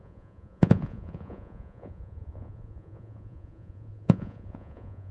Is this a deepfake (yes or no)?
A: yes